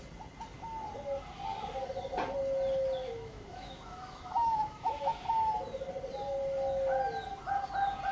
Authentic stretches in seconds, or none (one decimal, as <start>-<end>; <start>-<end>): 0.0-3.0; 5.3-8.1